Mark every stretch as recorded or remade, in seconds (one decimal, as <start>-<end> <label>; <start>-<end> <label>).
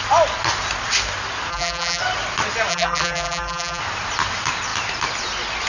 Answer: 0.0-1.5 recorded; 1.5-2.0 remade; 2.0-2.7 recorded; 2.7-3.8 remade; 3.8-5.7 recorded